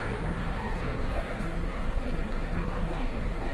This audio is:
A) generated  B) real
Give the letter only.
A